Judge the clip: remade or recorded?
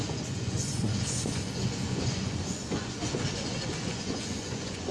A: remade